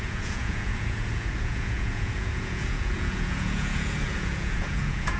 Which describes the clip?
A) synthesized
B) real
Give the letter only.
A